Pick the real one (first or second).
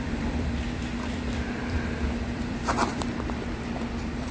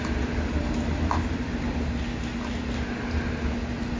second